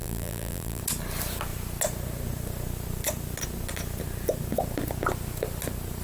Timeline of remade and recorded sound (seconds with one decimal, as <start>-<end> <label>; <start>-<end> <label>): 0.0-0.8 remade; 0.8-6.0 recorded